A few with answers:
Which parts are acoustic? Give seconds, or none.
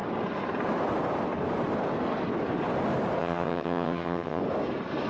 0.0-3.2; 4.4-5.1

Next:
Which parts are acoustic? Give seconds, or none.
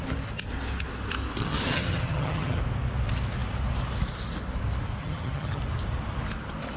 0.0-1.4; 2.6-5.0; 5.6-6.8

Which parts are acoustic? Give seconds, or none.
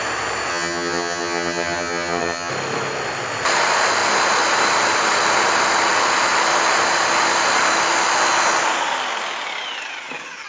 0.0-0.5; 2.5-10.5